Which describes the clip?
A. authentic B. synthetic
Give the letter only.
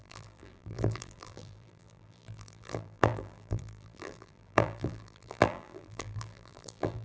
B